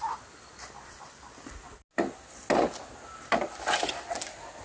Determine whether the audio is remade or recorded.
recorded